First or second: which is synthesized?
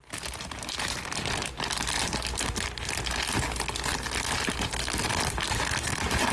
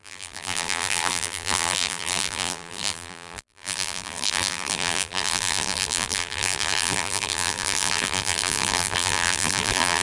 second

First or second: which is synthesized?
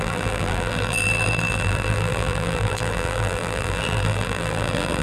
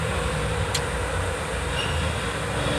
first